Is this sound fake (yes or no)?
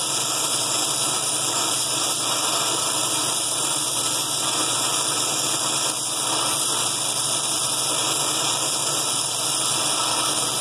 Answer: no